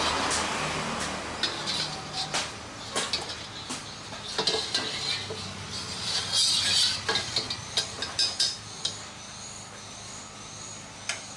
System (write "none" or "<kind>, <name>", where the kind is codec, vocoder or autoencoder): none